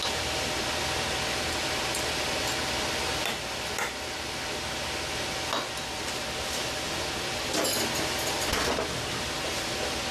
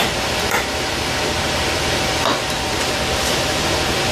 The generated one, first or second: second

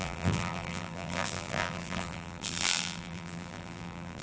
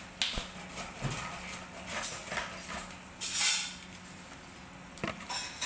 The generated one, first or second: first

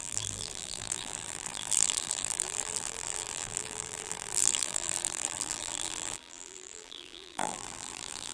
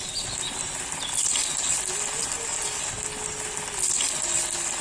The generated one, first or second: first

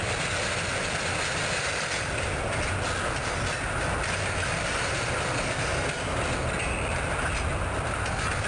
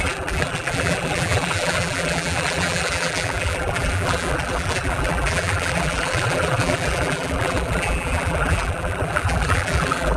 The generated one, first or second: second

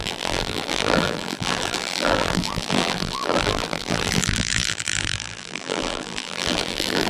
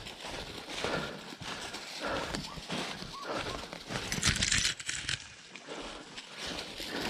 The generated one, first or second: first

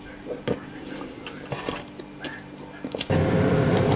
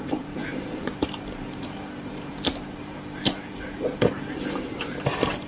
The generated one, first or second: second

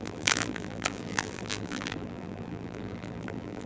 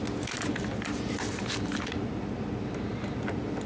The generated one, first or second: first